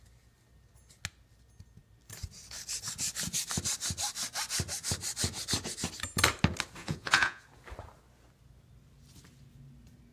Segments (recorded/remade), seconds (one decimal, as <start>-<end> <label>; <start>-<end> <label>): 0.0-6.8 recorded; 6.8-7.4 remade; 7.4-10.1 recorded